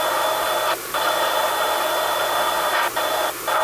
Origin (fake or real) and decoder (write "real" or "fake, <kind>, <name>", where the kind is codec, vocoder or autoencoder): real